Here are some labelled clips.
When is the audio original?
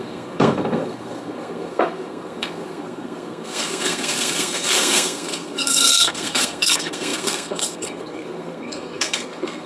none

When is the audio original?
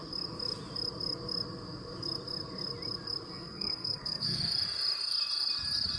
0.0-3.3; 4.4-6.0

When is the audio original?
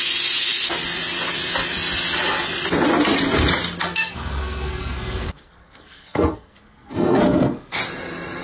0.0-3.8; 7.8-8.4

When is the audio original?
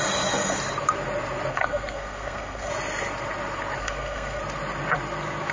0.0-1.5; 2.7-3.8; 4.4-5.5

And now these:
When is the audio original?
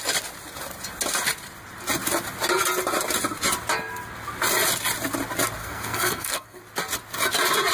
0.0-5.6; 6.6-7.7